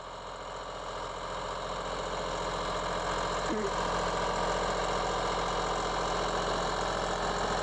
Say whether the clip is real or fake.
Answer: real